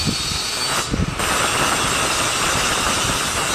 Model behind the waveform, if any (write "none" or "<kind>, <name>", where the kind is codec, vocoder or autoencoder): none